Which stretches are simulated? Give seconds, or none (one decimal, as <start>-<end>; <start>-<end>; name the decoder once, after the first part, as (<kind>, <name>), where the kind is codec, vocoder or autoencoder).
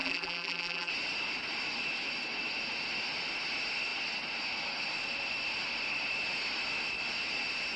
0.0-0.9 (vocoder, BigVGAN v2)